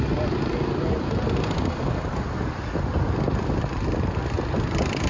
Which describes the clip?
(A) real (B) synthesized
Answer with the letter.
A